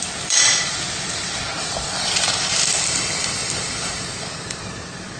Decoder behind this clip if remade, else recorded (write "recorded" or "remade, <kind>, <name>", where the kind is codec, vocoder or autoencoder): remade, vocoder, BigVGAN v2